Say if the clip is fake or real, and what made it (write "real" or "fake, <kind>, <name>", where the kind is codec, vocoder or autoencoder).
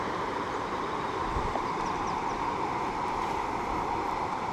fake, vocoder, BigVGAN v2